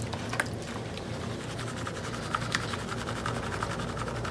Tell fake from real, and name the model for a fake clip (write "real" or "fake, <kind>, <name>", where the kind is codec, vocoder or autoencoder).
real